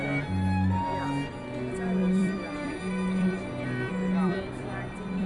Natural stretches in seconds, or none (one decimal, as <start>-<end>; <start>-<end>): 0.0-2.0

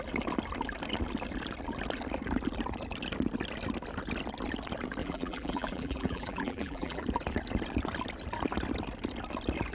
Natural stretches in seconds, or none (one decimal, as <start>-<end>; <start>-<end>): 0.0-5.0; 7.0-9.7

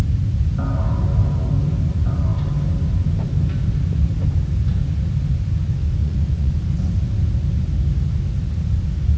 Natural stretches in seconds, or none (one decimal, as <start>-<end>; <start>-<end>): 0.0-6.0; 6.5-9.2

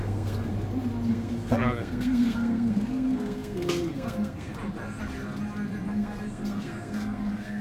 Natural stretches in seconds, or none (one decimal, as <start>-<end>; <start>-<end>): 0.5-1.1; 4.5-5.9

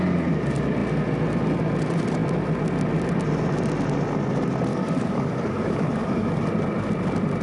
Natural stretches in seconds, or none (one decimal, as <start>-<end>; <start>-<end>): 0.0-4.7; 6.4-7.4

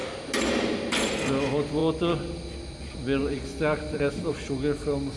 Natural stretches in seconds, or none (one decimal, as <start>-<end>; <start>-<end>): 0.0-5.2